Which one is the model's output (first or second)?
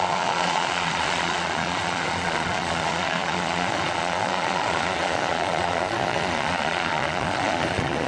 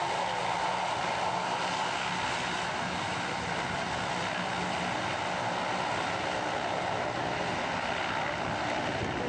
first